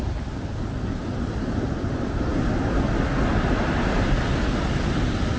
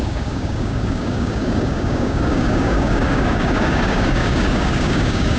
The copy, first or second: second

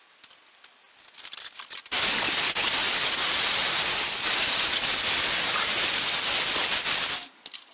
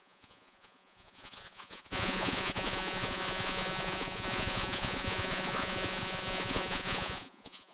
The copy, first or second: second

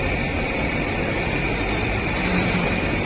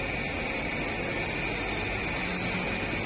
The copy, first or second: first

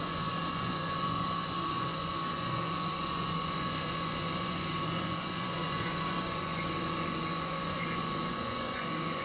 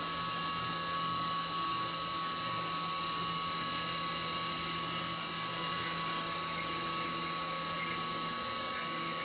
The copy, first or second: first